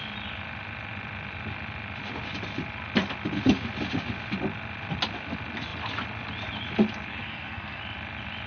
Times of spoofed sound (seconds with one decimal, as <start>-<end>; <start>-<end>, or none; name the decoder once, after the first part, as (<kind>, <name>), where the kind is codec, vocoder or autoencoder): 7.1-7.8 (codec, SNAC)